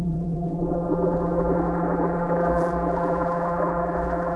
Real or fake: fake